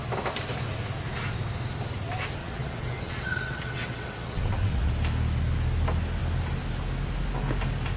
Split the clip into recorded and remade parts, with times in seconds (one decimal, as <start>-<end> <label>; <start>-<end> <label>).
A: 0.0-2.4 recorded; 2.4-4.9 remade; 4.9-8.0 recorded